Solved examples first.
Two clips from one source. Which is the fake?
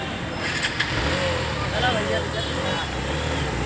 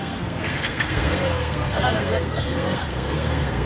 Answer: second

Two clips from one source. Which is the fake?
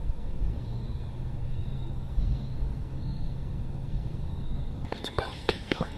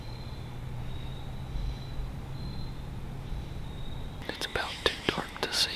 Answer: first